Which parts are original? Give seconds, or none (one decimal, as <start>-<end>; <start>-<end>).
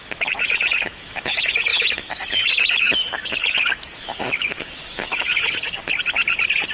5.3-6.7